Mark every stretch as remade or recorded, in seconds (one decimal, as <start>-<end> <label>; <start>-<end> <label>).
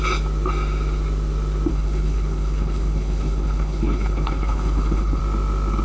0.0-1.7 recorded; 1.7-5.2 remade; 5.2-5.8 recorded